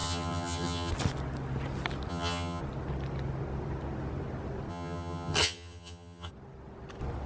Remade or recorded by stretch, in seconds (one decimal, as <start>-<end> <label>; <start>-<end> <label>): 0.0-0.9 remade; 0.9-2.1 recorded; 2.1-2.6 remade; 2.6-4.7 recorded; 4.7-6.3 remade; 6.3-7.3 recorded